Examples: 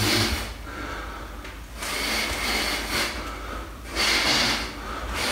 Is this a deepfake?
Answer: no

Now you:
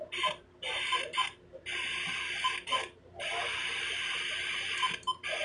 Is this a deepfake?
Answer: no